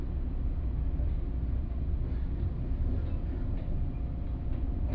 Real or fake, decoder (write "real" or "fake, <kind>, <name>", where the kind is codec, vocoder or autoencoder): real